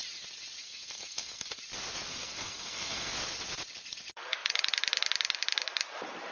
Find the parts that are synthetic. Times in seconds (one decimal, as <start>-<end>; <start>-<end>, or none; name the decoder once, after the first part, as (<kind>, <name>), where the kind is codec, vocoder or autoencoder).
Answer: 0.6-1.6 (codec, SNAC); 2.1-3.1